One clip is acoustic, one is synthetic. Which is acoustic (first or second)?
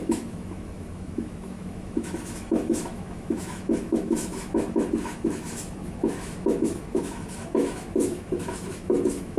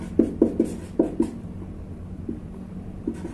second